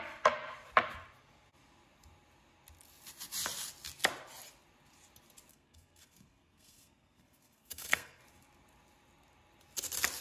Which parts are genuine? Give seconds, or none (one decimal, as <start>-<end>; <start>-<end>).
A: 0.0-5.5; 8.2-10.2